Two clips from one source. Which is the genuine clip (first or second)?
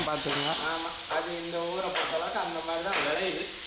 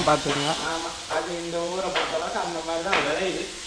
first